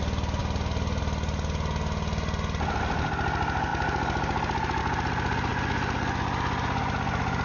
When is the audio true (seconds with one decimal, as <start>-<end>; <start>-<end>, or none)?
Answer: 0.0-7.4